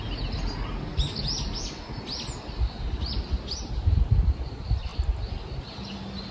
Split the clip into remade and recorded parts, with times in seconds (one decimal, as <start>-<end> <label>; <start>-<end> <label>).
0.0-6.3 recorded